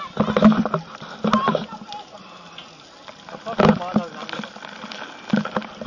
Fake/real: real